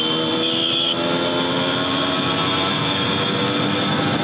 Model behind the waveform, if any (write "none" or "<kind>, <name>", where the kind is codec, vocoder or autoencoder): none